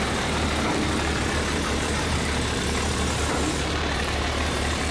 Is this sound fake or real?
fake